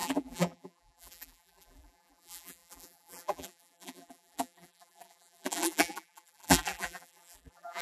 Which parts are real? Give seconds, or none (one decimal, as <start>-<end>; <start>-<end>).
none